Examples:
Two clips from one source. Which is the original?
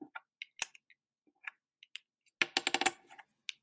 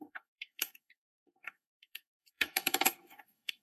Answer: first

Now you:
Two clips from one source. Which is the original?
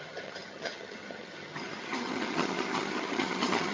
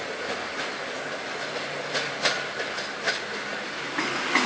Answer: second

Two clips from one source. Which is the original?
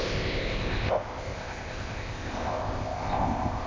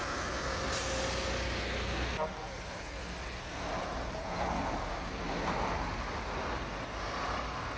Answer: second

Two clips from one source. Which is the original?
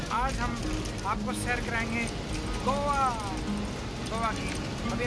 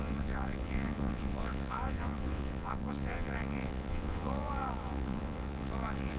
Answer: first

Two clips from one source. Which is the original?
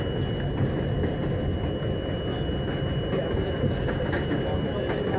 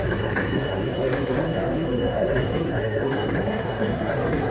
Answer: first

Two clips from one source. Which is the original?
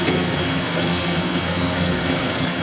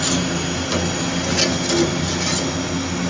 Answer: second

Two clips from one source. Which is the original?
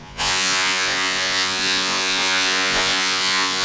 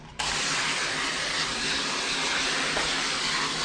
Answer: second